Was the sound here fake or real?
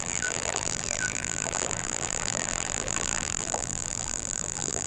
fake